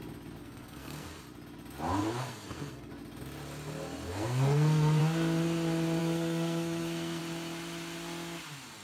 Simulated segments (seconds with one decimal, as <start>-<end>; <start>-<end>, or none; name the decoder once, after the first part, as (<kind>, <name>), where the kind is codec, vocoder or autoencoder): 0.4-1.2 (codec, SNAC); 2.0-2.9; 4.1-5.0; 6.0-7.2